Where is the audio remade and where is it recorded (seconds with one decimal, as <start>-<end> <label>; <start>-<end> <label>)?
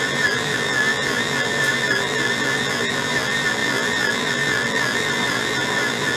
0.0-6.2 remade